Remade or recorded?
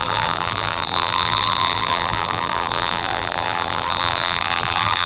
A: remade